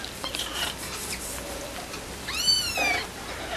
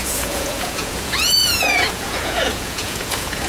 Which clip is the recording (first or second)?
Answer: first